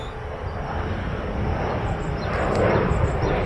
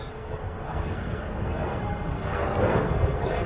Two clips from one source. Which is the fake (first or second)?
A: second